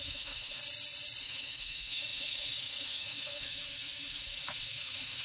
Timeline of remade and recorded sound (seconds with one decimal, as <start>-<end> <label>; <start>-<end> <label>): 0.0-0.6 remade; 0.6-1.2 recorded; 1.2-5.2 remade